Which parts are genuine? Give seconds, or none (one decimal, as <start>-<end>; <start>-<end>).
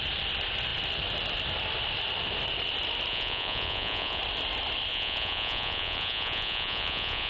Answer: 0.0-3.1; 4.2-4.9